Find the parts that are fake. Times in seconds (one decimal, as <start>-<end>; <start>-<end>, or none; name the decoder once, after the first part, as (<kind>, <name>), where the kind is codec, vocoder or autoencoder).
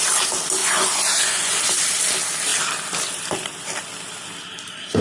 0.6-1.6 (vocoder, Vocos)